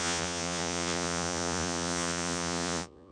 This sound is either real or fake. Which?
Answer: fake